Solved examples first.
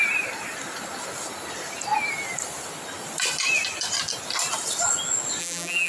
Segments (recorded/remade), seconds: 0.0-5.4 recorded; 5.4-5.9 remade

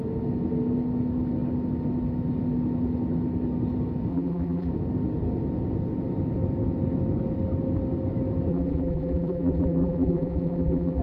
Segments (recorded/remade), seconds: 0.0-4.1 recorded; 4.1-4.7 remade; 4.7-8.5 recorded; 8.5-11.0 remade

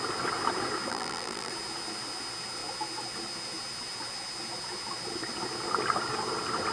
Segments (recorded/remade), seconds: 0.0-0.9 recorded; 0.9-1.5 remade; 1.5-6.7 recorded